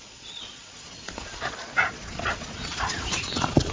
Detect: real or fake fake